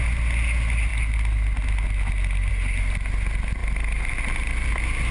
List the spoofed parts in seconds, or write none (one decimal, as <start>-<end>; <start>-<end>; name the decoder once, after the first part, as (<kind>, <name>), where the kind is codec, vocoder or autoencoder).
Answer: none